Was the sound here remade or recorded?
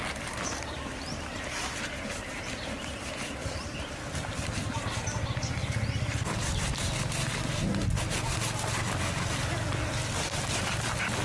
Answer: recorded